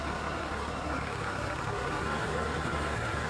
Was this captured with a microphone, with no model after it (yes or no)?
no